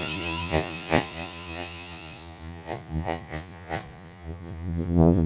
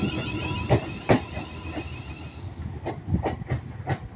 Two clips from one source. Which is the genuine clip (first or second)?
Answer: second